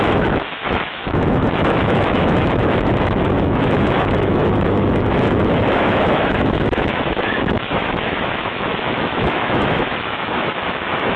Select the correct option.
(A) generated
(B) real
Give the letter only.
A